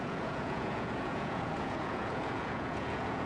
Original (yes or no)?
no